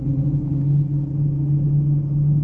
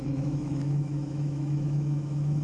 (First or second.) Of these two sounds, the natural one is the first